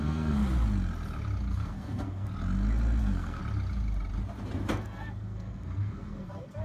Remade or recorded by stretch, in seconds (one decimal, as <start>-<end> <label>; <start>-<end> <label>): 0.0-0.4 remade; 0.4-1.5 recorded; 1.5-2.3 remade; 2.3-3.0 recorded; 3.0-3.4 remade; 3.4-4.7 recorded; 4.7-6.6 remade